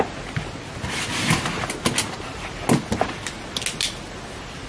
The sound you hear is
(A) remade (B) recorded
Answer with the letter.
B